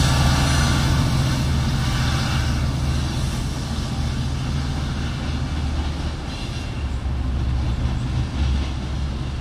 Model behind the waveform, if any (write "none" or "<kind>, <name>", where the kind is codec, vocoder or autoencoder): none